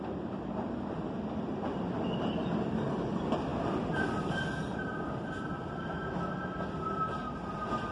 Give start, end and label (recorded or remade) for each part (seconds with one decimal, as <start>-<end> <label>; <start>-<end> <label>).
0.0-7.9 recorded